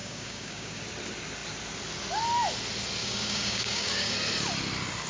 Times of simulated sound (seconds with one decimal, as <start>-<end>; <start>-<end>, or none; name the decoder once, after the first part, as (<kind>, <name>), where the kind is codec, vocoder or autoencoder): 0.0-0.8 (codec, DAC); 3.0-4.1